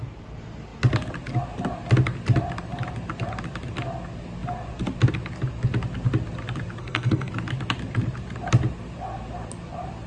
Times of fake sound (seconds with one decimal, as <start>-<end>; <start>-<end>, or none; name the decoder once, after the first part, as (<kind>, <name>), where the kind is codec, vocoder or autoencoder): 6.8-7.3 (codec, SNAC)